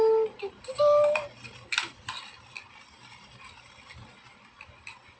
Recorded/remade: recorded